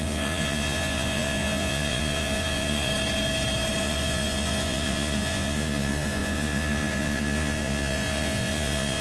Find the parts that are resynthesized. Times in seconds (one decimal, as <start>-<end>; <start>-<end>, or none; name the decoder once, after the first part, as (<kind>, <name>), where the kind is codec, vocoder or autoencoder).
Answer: 0.0-2.9 (vocoder, Vocos); 3.8-9.0

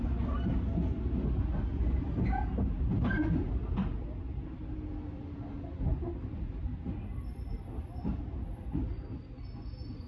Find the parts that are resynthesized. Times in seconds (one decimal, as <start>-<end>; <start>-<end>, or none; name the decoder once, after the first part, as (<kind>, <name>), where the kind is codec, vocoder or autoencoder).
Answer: none

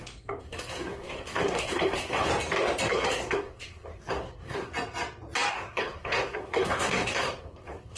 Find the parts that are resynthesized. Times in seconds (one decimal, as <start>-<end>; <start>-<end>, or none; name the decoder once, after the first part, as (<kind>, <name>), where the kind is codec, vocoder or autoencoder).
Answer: 0.0-2.3 (codec, SNAC); 2.9-4.7; 5.5-8.0

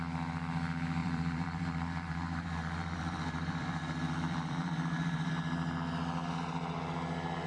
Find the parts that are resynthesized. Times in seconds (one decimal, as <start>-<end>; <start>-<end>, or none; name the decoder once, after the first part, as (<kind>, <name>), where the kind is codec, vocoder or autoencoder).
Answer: 1.0-5.3 (vocoder, BigVGAN v2)

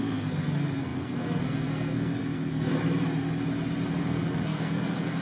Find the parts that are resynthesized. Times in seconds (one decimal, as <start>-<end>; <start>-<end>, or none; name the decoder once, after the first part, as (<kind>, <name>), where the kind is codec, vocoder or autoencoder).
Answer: 0.0-2.7 (codec, SNAC); 4.0-5.2